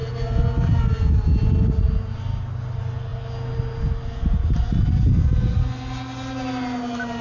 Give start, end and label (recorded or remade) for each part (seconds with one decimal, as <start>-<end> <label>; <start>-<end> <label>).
0.0-7.2 recorded